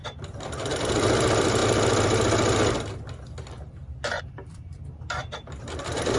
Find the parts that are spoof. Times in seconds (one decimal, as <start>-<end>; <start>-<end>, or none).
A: 0.0-1.6; 4.2-6.2